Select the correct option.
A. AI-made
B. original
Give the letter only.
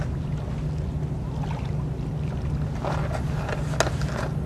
B